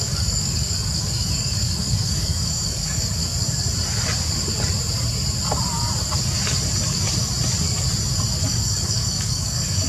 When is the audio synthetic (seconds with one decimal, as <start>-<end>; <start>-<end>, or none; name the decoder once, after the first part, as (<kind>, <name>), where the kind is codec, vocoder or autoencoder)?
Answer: 0.0-3.2 (codec, DAC); 8.3-9.9